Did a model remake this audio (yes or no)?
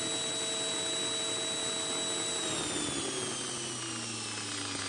no